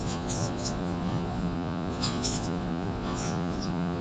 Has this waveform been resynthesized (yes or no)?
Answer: yes